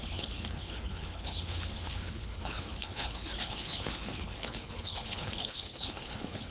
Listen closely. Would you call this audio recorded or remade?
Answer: remade